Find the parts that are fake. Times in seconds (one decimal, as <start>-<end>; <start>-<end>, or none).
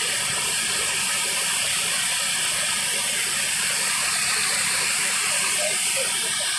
4.5-5.5